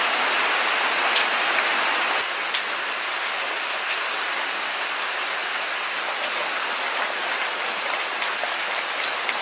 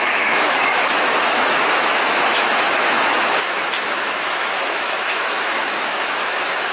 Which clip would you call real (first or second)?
first